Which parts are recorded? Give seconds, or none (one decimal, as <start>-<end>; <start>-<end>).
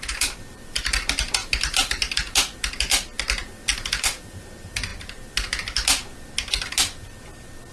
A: 0.0-1.4; 2.1-3.7; 4.4-7.7